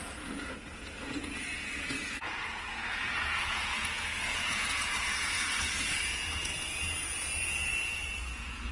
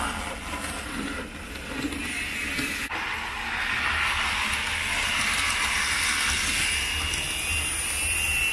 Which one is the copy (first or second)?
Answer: first